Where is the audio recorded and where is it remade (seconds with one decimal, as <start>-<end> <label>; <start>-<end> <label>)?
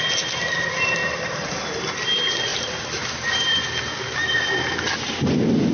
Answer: 0.0-1.0 recorded; 1.0-1.6 remade; 1.6-2.5 recorded; 2.5-3.2 remade; 3.2-5.7 recorded